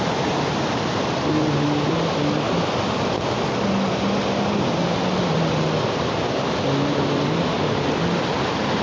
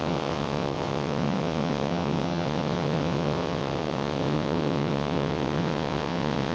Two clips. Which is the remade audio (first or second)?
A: second